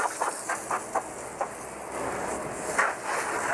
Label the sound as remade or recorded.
recorded